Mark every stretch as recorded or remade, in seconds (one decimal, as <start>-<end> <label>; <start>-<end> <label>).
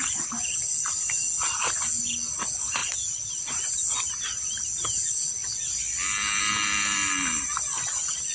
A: 0.0-8.3 recorded